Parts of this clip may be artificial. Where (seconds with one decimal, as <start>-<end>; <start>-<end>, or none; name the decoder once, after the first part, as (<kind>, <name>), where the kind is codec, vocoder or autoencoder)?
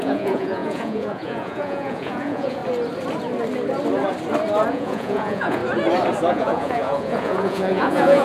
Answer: 0.0-2.6 (vocoder, Vocos); 4.7-5.6; 6.3-8.2